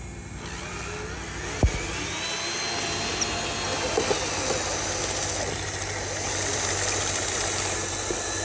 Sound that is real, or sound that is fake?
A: real